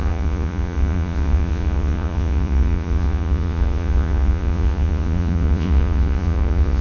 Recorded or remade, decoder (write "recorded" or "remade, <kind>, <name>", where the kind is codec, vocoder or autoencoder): remade, vocoder, Vocos